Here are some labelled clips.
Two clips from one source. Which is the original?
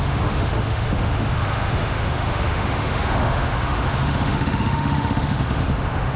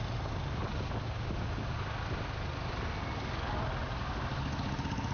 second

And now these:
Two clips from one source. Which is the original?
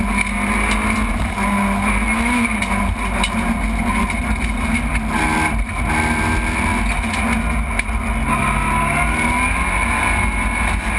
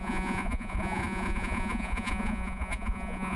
first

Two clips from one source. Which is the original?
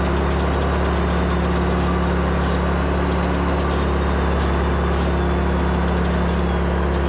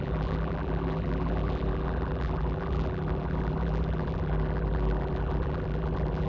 first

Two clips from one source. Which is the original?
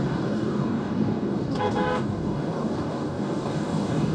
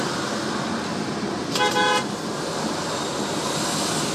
second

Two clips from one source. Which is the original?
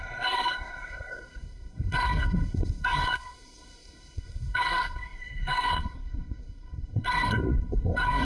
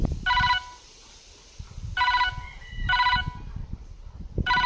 second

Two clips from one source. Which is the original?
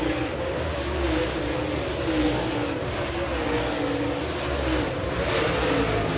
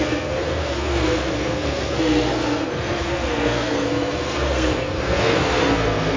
first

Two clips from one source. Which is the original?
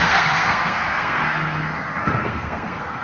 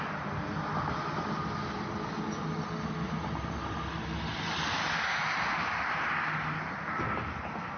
second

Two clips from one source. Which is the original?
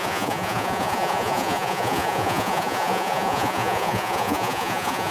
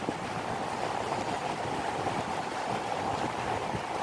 second